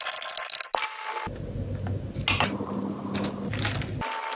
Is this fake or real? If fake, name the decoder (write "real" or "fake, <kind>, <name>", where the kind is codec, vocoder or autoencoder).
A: real